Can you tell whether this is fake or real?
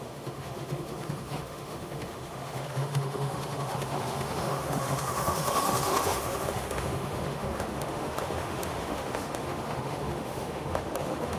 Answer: fake